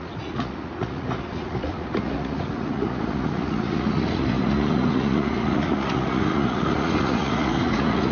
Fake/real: fake